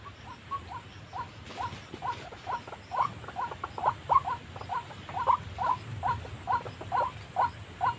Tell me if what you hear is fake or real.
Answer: real